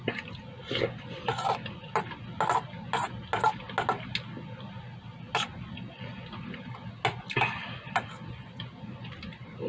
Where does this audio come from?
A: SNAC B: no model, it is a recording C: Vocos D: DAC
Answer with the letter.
B